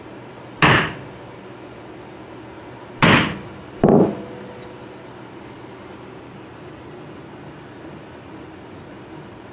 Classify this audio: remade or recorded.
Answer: recorded